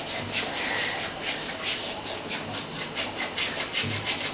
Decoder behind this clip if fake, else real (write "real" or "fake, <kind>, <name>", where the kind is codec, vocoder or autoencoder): real